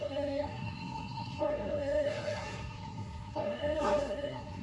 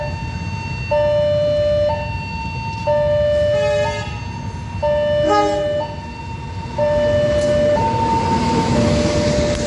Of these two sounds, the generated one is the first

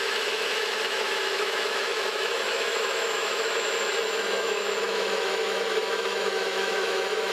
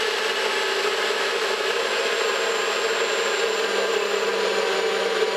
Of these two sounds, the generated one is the first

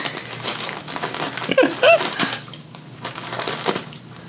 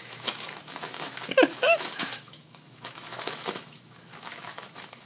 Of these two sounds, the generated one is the second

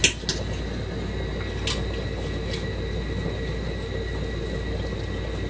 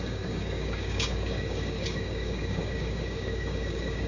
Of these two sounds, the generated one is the second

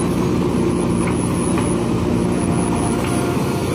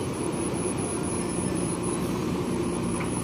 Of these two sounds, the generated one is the second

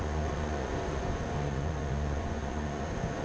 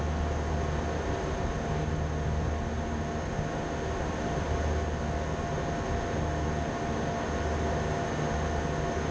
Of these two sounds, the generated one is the first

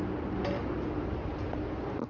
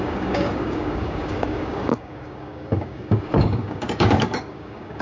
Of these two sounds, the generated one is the second